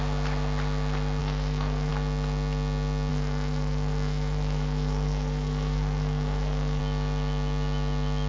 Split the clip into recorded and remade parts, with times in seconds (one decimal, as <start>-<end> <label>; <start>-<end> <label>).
0.0-1.2 recorded; 1.2-1.9 remade; 1.9-3.1 recorded; 3.1-6.8 remade; 6.8-8.3 recorded